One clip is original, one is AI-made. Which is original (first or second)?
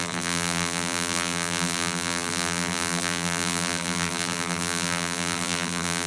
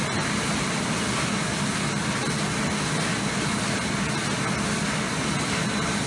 second